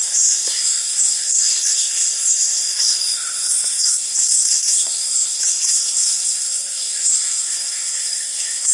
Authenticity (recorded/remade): remade